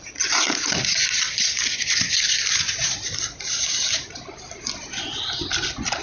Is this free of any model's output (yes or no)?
yes